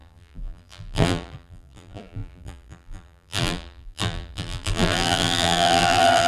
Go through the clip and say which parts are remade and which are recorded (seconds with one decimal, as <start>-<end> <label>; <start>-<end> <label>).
0.0-6.3 remade